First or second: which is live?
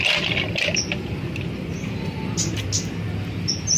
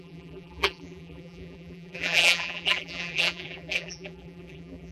first